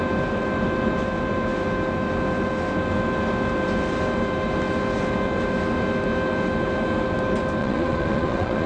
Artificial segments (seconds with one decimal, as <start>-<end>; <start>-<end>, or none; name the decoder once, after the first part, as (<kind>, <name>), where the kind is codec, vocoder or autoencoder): 7.6-8.7 (vocoder, Vocos)

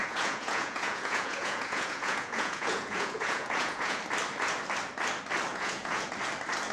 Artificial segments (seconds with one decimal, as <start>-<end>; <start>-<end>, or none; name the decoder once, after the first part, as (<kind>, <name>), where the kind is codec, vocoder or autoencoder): 0.0-4.0 (vocoder, Vocos); 5.5-6.1

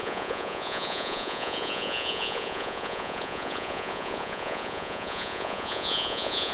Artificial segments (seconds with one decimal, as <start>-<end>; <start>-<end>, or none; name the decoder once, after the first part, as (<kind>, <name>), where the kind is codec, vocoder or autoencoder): 0.0-6.5 (vocoder, Vocos)

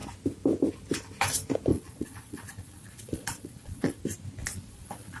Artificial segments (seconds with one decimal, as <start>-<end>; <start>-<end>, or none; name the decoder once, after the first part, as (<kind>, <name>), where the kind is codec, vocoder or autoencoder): 1.7-4.0 (vocoder, Vocos); 4.4-5.2

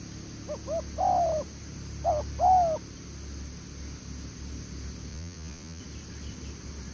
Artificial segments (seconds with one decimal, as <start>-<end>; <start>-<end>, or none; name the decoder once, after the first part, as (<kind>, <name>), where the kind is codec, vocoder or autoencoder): 5.1-5.8 (vocoder, Vocos)

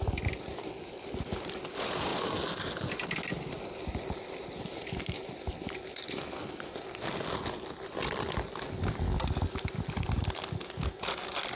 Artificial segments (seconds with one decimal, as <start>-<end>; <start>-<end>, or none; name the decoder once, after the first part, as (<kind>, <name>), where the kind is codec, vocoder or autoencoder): none

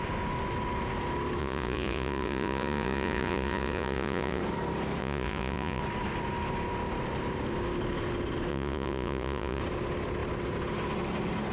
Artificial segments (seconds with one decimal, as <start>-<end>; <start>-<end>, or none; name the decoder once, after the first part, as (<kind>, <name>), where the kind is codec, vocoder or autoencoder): 1.4-4.4 (vocoder, Vocos); 5.0-5.8; 8.5-9.6